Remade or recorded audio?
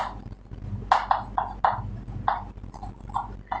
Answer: recorded